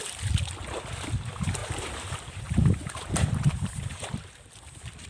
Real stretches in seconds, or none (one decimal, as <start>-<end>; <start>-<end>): 0.0-1.6; 4.1-5.1